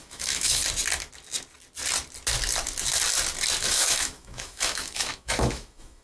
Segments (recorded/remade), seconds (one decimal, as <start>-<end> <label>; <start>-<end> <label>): 0.0-0.6 remade; 0.6-3.6 recorded; 3.6-6.0 remade